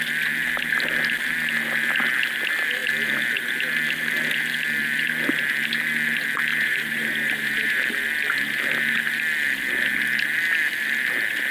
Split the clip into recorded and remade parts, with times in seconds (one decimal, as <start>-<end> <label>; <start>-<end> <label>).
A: 0.0-6.5 recorded; 6.5-7.8 remade; 7.8-11.5 recorded